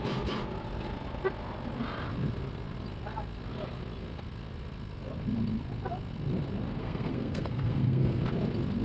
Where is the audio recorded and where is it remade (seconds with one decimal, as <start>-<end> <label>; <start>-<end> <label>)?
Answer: 0.0-6.8 recorded; 6.8-8.2 remade; 8.2-8.8 recorded